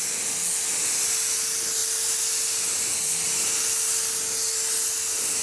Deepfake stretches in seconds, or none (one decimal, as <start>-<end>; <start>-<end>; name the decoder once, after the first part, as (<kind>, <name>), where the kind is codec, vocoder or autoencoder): none